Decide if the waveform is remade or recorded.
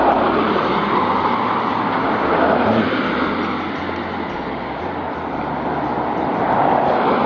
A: recorded